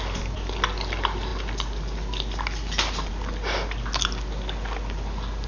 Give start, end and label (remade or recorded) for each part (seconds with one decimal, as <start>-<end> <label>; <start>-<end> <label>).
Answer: 0.0-5.5 recorded